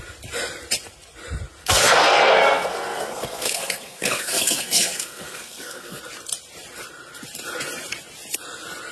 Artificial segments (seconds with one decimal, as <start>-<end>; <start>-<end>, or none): 1.6-6.0